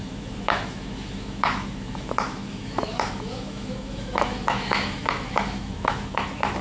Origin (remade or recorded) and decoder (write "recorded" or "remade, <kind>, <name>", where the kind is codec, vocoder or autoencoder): remade, autoencoder, DAC-VAE